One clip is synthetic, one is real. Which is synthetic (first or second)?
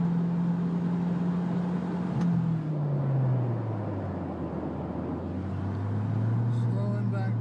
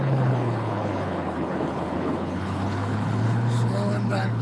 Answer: second